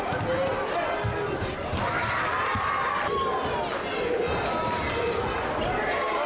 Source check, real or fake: real